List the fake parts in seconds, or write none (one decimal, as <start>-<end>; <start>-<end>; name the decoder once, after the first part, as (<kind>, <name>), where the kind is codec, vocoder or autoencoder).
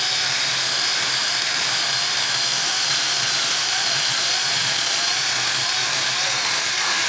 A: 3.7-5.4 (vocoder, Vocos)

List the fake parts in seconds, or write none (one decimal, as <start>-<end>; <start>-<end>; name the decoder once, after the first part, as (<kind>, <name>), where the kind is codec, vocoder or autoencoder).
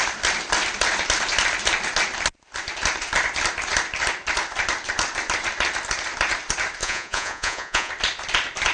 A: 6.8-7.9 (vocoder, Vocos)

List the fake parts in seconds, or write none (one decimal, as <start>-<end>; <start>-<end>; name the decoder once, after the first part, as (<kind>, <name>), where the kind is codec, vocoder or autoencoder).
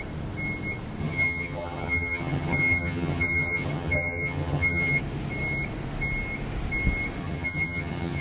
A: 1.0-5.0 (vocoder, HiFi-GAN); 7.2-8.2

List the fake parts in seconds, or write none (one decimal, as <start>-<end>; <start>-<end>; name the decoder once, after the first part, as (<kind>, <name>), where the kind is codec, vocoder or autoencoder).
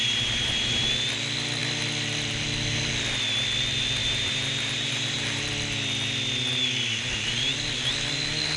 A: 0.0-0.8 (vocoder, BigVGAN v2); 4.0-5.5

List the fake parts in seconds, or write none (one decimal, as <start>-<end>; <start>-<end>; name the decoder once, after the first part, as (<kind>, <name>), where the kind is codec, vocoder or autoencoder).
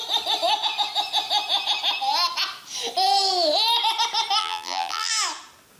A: 4.4-5.1 (vocoder, BigVGAN v2)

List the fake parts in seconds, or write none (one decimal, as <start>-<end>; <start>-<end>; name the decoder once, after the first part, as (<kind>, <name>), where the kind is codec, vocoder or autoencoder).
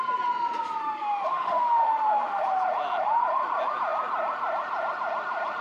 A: 0.8-2.4 (autoencoder, DAC-VAE)